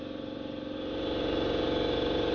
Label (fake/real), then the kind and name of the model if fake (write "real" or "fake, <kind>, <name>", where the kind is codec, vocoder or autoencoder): fake, vocoder, BigVGAN v2